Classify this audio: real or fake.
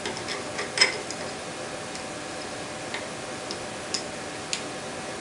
real